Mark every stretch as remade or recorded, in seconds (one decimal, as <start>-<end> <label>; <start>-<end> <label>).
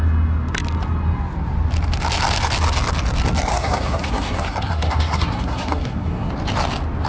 0.0-3.5 recorded; 3.5-6.3 remade; 6.3-7.1 recorded